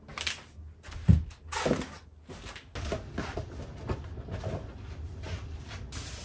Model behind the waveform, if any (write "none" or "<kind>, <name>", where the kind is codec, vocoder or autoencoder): none